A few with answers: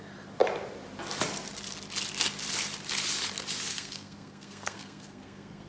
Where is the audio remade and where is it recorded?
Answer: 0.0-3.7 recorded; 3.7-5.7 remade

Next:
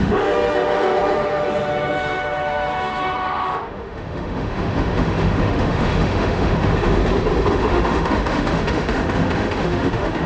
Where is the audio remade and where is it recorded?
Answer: 0.0-7.0 remade; 7.0-7.5 recorded; 7.5-10.3 remade

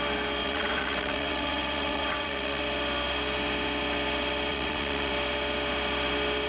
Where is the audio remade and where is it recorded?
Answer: 0.0-0.4 recorded; 0.4-2.6 remade; 2.6-4.5 recorded; 4.5-5.1 remade; 5.1-6.5 recorded

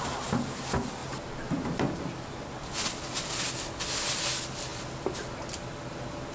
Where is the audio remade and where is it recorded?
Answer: 0.0-6.3 recorded

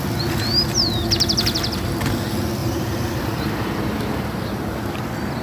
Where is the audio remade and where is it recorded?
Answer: 0.0-2.6 recorded; 2.6-4.8 remade; 4.8-5.4 recorded

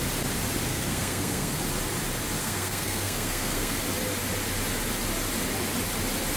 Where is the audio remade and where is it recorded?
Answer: 0.0-0.7 recorded; 0.7-1.6 remade; 1.6-2.4 recorded; 2.4-3.8 remade; 3.8-6.4 recorded

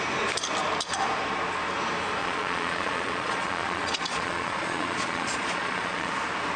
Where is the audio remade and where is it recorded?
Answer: 0.0-2.2 recorded; 2.2-6.1 remade; 6.1-6.6 recorded